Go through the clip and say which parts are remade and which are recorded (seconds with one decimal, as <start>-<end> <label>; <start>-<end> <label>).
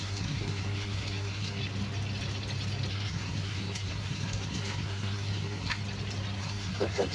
0.0-1.6 remade; 1.6-2.9 recorded; 2.9-5.8 remade; 5.8-6.4 recorded; 6.4-7.1 remade